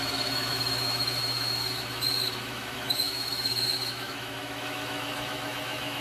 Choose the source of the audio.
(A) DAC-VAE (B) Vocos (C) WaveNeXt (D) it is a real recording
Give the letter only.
A